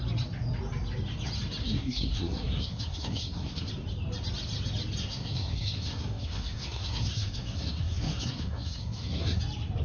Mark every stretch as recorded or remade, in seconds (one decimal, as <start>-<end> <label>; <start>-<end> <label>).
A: 0.0-1.6 recorded; 1.6-3.7 remade; 3.7-5.0 recorded; 5.0-9.4 remade; 9.4-9.8 recorded